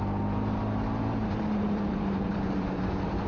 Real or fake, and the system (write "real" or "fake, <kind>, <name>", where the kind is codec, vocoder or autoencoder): fake, vocoder, BigVGAN v2